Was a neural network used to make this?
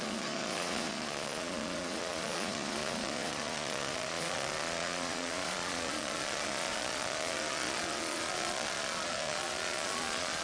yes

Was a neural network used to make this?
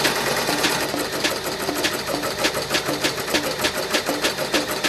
no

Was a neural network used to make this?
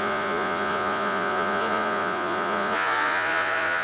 yes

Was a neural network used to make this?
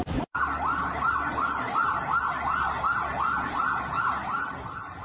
no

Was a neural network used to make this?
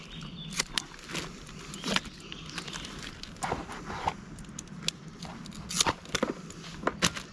no